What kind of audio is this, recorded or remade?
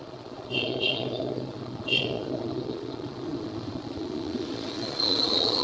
remade